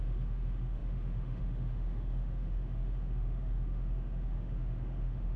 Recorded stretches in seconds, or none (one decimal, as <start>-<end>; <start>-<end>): none

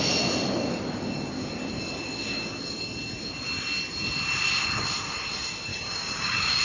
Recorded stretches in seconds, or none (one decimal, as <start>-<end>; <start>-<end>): 0.0-5.7

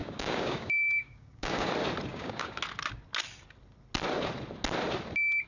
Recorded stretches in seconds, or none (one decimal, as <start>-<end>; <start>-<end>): 1.7-2.1; 2.6-5.5